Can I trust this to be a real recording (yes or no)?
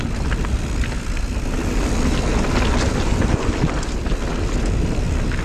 yes